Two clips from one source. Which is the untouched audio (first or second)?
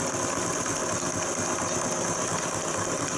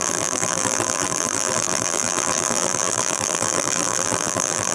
first